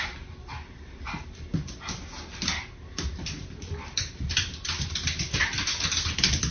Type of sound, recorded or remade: recorded